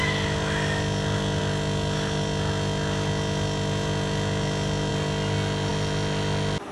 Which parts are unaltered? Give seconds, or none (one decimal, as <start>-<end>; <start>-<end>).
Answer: 0.0-6.7

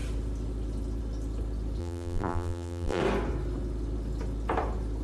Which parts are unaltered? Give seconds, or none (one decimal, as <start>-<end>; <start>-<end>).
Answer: 0.0-1.8; 3.0-5.0

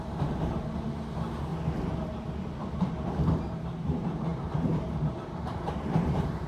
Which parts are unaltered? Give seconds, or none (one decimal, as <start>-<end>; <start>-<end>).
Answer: 1.5-2.6

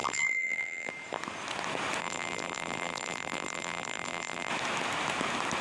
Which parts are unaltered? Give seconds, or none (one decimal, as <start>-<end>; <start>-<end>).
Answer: 0.9-2.0; 4.5-5.6

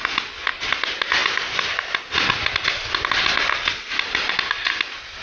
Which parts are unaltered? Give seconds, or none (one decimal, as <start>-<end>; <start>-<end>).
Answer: 0.0-5.2

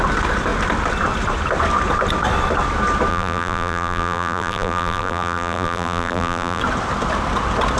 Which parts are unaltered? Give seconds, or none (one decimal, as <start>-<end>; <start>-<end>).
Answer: 0.0-3.1; 6.6-7.8